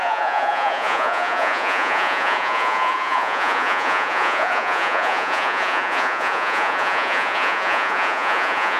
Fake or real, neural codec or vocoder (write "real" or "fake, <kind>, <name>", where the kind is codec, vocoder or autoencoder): fake, vocoder, Vocos